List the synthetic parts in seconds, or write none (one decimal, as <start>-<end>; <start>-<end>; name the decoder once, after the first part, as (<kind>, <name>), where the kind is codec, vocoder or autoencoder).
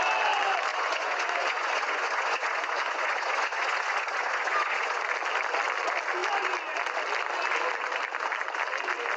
0.7-5.0 (vocoder, Vocos)